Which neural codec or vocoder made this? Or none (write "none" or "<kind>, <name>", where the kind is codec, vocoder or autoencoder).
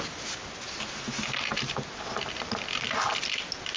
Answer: none